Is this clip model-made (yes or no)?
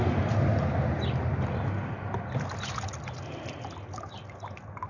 no